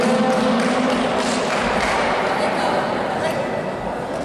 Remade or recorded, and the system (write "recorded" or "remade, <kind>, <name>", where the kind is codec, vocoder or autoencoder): recorded